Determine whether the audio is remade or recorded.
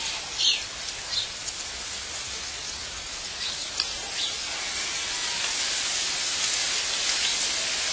recorded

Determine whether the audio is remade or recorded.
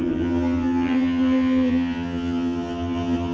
remade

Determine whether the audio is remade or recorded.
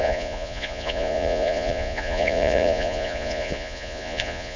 remade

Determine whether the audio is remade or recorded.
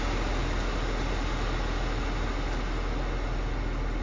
recorded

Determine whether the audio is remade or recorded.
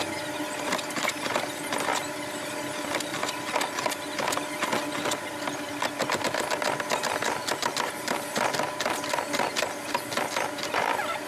recorded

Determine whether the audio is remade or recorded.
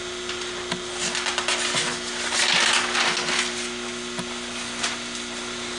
recorded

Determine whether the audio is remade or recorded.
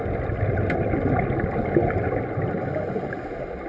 recorded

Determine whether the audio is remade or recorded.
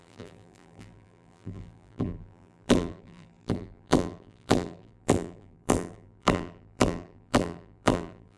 remade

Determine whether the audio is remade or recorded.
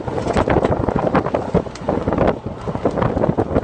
recorded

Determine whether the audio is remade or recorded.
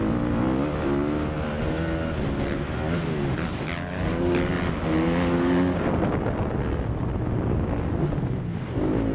recorded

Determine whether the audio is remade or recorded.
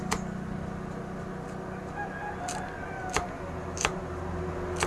recorded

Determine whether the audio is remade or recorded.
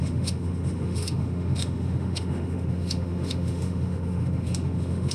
remade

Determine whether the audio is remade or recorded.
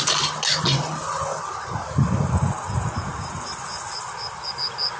recorded